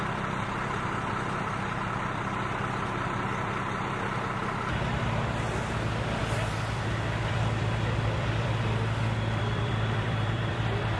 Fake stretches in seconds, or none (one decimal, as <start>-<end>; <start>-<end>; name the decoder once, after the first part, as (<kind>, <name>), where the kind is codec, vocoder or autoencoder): 6.2-11.0 (vocoder, BigVGAN v2)